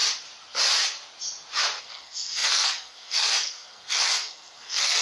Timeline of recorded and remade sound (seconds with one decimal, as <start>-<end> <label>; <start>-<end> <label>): 0.0-1.8 recorded; 1.8-5.0 remade